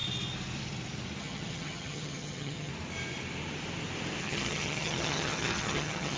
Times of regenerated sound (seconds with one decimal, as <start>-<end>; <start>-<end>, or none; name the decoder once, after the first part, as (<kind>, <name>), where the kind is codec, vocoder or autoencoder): 1.2-2.7 (vocoder, HiFi-GAN); 4.2-6.2